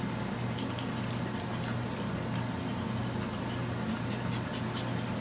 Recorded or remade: recorded